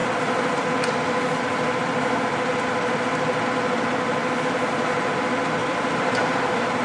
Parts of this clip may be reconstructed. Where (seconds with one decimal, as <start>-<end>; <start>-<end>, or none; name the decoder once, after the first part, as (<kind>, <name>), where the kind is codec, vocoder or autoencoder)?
0.0-0.7 (vocoder, BigVGAN v2); 1.5-3.3; 5.6-6.8

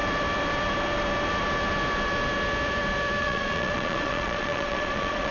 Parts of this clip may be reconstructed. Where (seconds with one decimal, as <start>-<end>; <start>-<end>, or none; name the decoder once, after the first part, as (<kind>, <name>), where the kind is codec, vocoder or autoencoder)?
3.2-5.3 (vocoder, Vocos)

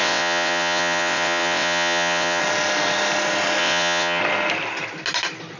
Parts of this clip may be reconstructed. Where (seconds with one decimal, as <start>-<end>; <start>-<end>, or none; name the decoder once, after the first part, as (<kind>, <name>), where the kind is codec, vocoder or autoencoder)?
0.0-2.4 (vocoder, WaveNeXt); 3.6-4.2

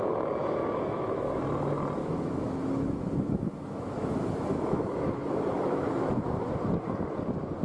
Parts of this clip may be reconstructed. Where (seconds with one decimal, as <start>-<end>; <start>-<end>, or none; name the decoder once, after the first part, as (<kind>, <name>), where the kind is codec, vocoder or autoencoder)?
0.4-1.4 (autoencoder, DAC-VAE); 2.0-6.6